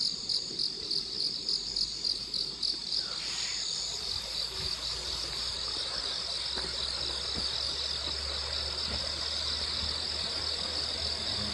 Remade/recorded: recorded